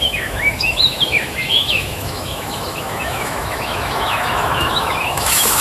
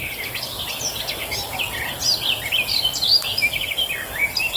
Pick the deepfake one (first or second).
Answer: first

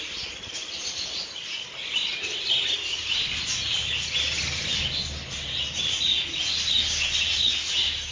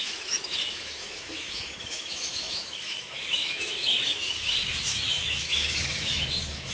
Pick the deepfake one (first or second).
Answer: second